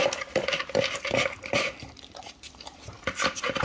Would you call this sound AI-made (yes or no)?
no